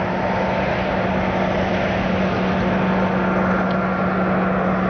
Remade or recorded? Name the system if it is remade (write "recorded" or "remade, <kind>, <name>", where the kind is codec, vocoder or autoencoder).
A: recorded